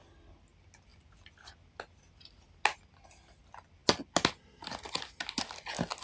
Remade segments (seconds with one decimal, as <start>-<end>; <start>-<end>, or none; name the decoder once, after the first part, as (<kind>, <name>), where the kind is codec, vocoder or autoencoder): none